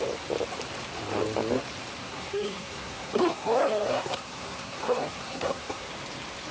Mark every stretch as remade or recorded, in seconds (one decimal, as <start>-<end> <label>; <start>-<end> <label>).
0.0-2.0 recorded; 2.0-5.9 remade; 5.9-6.5 recorded